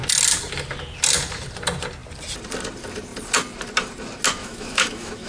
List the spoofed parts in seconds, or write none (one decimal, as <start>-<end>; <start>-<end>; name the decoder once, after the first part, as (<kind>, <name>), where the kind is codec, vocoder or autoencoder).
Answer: 4.4-5.3 (autoencoder, DAC-VAE)